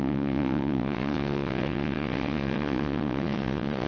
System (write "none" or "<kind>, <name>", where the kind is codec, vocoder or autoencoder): vocoder, WaveNeXt